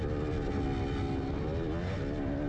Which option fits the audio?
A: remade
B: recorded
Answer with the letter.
B